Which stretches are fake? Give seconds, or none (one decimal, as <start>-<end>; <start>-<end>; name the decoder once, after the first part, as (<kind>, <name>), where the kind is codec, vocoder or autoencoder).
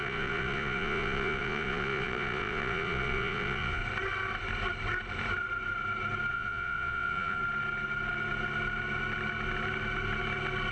0.0-3.8 (vocoder, Vocos); 6.3-7.4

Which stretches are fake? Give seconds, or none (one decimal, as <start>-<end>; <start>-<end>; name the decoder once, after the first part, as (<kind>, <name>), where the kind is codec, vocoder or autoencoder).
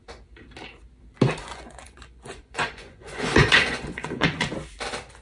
1.4-4.5 (vocoder, Vocos)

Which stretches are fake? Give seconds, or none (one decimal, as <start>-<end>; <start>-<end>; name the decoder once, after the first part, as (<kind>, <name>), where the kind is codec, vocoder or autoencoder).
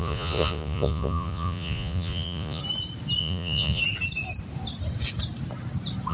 0.0-2.6 (vocoder, Vocos); 3.2-3.8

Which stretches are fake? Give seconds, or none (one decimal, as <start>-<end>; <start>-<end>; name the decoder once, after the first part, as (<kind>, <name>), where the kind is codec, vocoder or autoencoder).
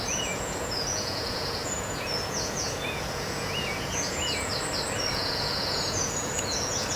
0.0-4.5 (vocoder, Vocos); 5.1-7.0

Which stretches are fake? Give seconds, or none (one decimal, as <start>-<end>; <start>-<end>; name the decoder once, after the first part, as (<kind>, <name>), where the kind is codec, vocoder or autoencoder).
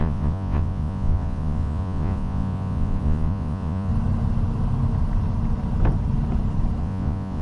0.0-3.9 (vocoder, Vocos); 6.8-7.4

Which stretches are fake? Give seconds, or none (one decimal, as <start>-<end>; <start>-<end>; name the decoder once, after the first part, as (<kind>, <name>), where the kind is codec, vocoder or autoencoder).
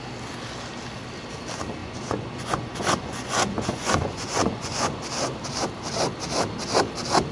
1.8-5.0 (vocoder, Vocos)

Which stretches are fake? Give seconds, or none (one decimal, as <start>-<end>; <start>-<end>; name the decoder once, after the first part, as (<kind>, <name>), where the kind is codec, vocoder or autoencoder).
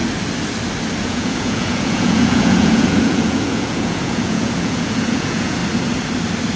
1.0-5.6 (vocoder, Vocos)